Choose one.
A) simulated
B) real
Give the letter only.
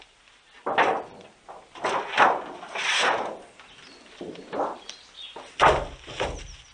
B